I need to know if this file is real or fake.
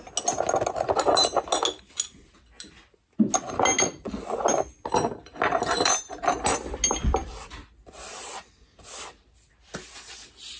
real